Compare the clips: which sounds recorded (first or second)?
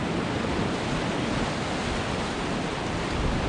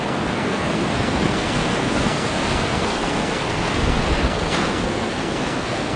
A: first